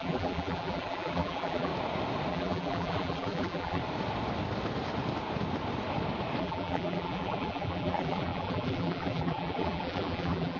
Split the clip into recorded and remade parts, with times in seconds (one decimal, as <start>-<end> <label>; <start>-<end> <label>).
0.0-1.7 remade; 1.7-2.3 recorded; 2.3-3.8 remade; 3.8-6.4 recorded; 6.4-10.6 remade